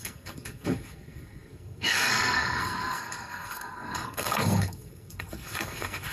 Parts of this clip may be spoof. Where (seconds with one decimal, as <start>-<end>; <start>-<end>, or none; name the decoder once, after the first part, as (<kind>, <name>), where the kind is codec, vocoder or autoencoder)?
0.0-6.1 (codec, SNAC)